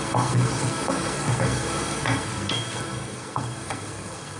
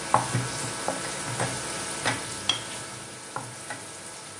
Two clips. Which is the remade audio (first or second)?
first